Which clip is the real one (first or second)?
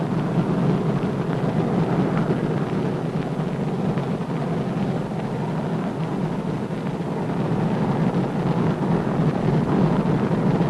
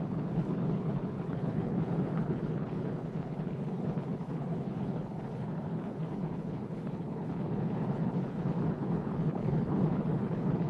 first